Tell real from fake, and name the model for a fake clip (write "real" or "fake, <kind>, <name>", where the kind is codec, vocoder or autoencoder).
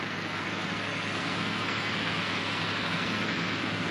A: fake, codec, SNAC